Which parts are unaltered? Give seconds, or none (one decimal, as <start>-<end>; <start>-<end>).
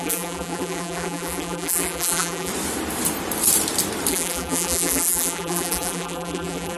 2.5-4.1